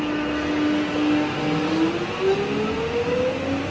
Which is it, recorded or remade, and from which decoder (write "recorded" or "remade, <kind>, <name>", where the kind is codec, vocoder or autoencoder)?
recorded